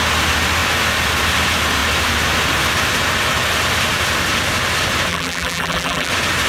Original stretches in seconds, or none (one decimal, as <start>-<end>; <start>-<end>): 0.0-5.1; 6.1-6.5